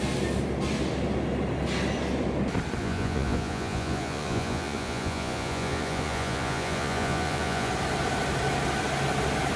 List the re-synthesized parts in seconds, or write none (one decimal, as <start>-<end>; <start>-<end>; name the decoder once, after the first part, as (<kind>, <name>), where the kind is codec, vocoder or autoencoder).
2.8-7.7 (vocoder, Vocos)